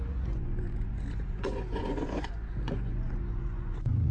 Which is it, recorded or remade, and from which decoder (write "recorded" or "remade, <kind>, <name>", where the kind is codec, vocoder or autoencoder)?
remade, vocoder, Vocos